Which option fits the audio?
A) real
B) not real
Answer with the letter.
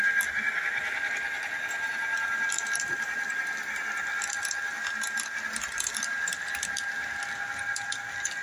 A